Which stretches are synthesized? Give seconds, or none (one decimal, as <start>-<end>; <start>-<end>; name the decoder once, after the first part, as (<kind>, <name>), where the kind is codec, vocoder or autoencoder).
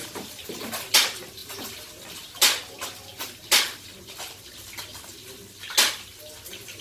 0.0-0.6 (vocoder, BigVGAN v2); 1.4-1.9